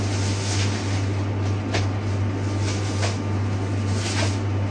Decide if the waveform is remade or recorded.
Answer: recorded